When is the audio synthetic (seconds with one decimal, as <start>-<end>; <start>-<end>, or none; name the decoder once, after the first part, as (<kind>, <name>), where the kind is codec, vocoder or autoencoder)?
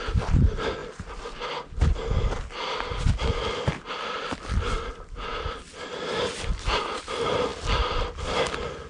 5.3-6.1 (vocoder, BigVGAN v2)